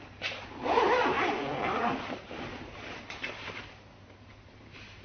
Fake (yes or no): yes